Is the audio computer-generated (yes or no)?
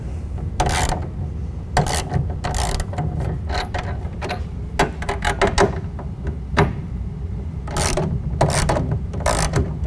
no